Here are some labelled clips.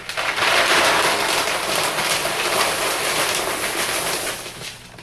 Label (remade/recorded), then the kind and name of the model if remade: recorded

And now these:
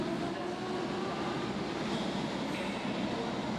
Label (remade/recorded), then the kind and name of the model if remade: recorded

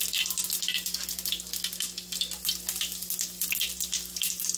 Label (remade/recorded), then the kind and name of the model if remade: recorded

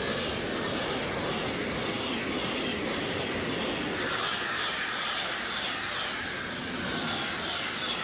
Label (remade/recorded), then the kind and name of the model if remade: recorded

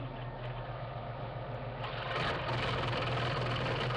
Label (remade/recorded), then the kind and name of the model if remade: recorded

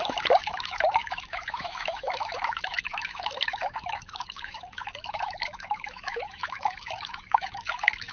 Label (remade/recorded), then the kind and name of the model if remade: remade, autoencoder, DAC-VAE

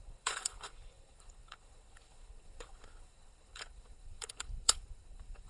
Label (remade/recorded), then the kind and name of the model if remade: remade, codec, HILCodec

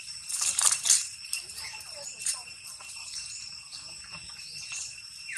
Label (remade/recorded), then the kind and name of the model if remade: remade, vocoder, BigVGAN v2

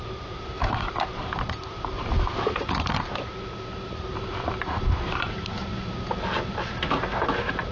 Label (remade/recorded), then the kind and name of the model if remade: recorded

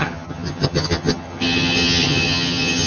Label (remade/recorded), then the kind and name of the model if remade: remade, vocoder, HiFi-GAN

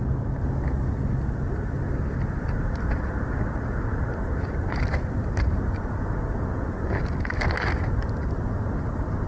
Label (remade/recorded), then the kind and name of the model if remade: recorded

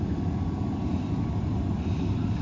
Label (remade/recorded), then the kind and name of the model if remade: recorded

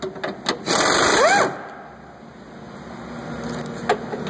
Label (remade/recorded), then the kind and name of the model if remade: recorded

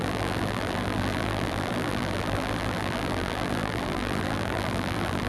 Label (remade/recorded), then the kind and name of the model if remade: remade, vocoder, BigVGAN v2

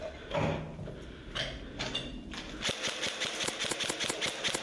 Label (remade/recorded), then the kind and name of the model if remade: recorded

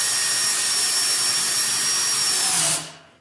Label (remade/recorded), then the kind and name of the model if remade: recorded